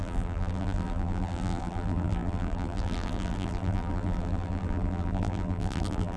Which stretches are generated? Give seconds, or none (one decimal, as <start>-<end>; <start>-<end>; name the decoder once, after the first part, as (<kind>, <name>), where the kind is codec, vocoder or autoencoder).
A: 0.0-6.2 (vocoder, BigVGAN v2)